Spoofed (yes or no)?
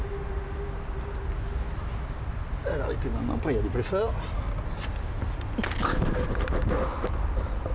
no